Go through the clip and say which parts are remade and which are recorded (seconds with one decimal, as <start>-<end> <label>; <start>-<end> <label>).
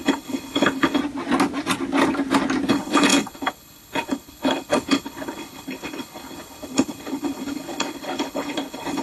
0.0-1.0 remade; 1.0-2.7 recorded; 2.7-9.0 remade